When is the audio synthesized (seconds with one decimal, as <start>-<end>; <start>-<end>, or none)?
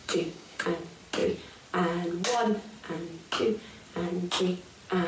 0.0-0.7